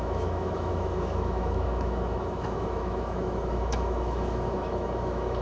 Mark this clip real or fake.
fake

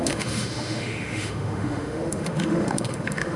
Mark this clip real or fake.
fake